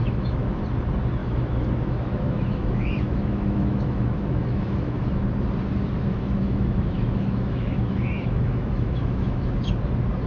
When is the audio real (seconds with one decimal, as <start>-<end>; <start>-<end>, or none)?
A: 0.6-1.2; 5.1-6.1; 9.7-10.3